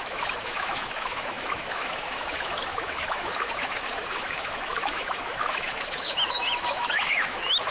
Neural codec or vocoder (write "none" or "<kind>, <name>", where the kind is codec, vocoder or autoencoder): autoencoder, DAC-VAE